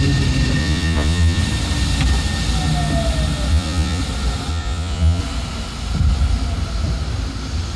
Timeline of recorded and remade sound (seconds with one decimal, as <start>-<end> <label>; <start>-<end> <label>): 0.0-0.6 recorded; 0.6-1.4 remade; 1.4-3.5 recorded; 3.5-4.0 remade; 4.0-4.5 recorded; 4.5-5.2 remade; 5.2-7.8 recorded